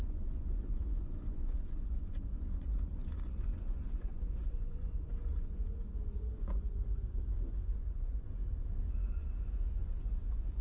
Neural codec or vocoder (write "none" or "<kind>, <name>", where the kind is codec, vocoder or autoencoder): vocoder, Vocos